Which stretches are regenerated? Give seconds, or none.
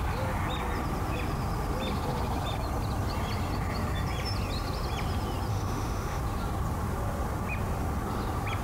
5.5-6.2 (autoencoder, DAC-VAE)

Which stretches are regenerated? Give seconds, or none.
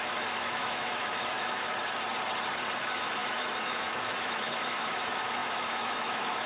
0.0-1.7 (autoencoder, DAC-VAE); 2.8-6.5